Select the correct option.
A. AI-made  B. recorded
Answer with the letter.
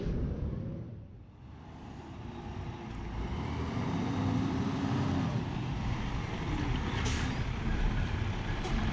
A